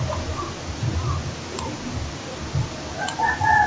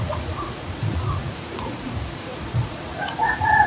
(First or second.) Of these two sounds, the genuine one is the first